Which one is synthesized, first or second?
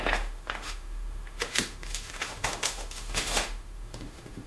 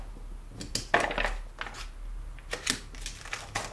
first